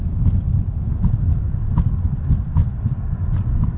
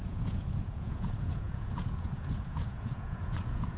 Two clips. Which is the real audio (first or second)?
first